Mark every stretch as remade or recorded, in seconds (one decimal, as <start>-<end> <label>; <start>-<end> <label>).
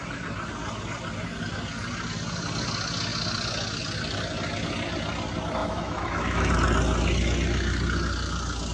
0.0-5.6 recorded; 5.6-6.5 remade; 6.5-8.7 recorded